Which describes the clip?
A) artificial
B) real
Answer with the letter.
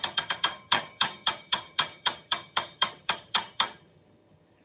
A